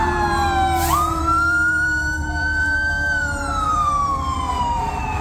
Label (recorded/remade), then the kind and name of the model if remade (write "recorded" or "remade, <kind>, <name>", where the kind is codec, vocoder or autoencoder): remade, vocoder, BigVGAN v2